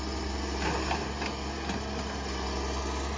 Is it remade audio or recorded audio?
recorded